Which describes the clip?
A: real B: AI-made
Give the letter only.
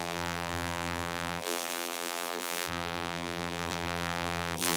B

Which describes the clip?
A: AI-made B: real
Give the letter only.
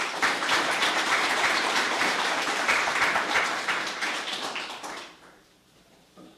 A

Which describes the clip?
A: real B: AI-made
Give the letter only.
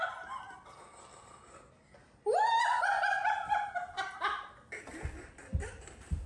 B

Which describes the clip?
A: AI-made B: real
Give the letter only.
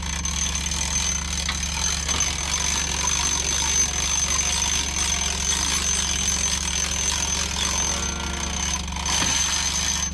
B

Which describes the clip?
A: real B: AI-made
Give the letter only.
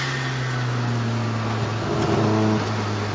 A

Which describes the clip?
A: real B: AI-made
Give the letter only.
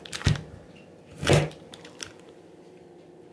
B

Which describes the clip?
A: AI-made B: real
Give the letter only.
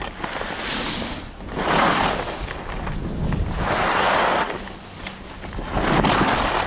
B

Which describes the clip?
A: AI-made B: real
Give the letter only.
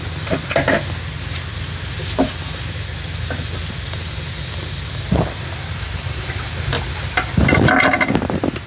B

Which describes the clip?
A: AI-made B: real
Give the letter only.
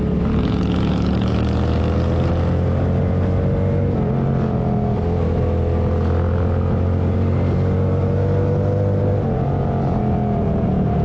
B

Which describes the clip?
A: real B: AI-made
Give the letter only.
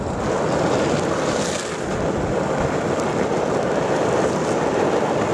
A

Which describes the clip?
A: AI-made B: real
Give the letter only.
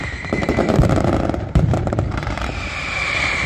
A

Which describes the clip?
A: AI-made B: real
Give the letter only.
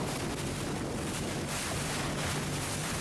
B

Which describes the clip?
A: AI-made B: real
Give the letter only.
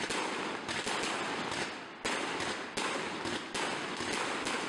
B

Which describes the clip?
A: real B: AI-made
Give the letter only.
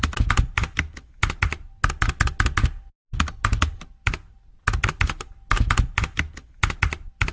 A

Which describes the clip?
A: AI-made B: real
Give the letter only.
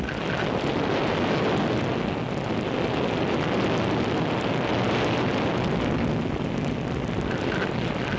B